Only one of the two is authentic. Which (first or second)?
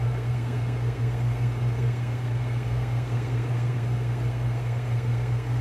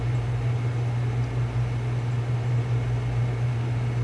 second